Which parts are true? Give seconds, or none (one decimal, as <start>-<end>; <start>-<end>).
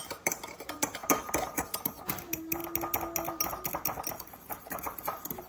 2.6-4.5